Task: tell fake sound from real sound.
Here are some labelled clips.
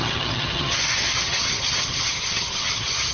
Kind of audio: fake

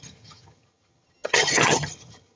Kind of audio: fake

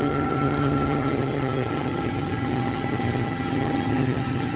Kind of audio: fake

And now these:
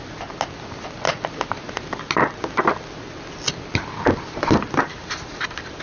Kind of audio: real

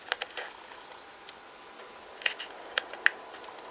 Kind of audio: real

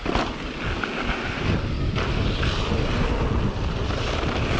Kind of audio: real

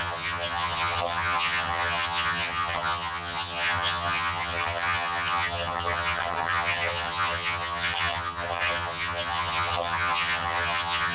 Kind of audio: fake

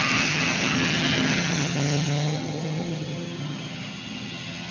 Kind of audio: fake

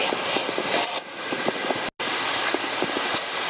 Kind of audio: real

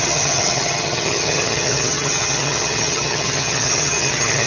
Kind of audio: fake